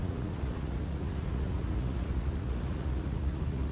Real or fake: fake